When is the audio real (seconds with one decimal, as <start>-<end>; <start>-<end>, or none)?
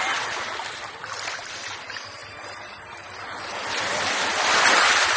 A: 0.0-2.2; 3.8-5.2